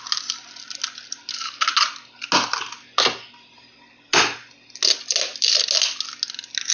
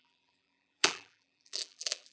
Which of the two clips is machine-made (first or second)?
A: second